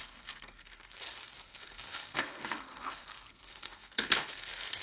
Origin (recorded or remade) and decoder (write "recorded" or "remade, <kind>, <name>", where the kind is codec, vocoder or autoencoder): remade, codec, SNAC